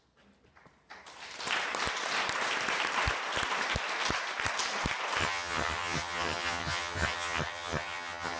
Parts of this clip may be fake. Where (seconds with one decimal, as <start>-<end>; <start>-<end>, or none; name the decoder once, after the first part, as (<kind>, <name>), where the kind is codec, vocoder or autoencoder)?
5.2-8.4 (vocoder, HiFi-GAN)